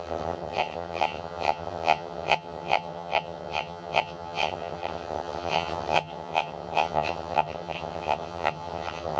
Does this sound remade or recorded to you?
remade